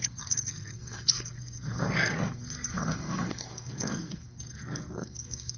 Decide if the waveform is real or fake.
fake